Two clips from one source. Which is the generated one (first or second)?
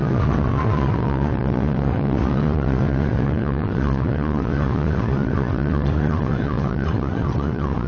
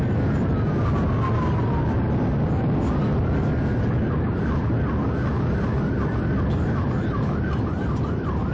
first